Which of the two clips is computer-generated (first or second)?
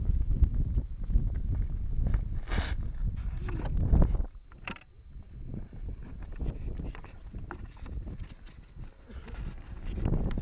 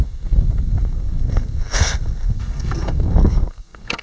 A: second